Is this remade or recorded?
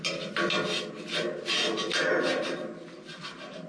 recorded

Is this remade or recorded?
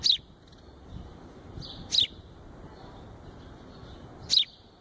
recorded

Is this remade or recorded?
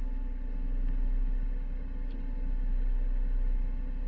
recorded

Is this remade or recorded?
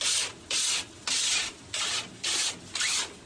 recorded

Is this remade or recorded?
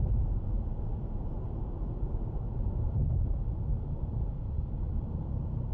remade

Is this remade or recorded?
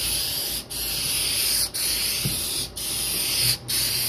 recorded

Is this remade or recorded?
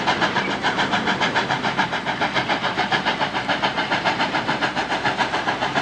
remade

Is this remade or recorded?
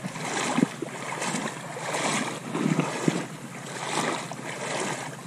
recorded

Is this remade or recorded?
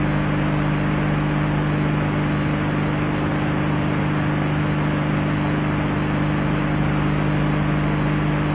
recorded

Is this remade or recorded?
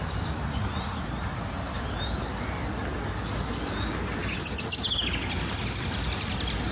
recorded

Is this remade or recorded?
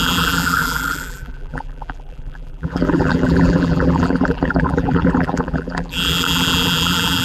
remade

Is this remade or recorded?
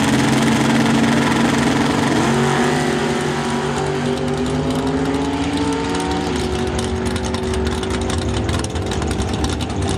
recorded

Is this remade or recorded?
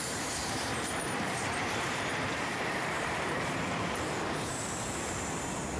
remade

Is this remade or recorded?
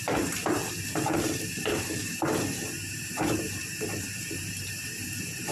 remade